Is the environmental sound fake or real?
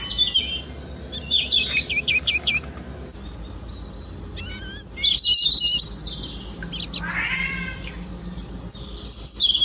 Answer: real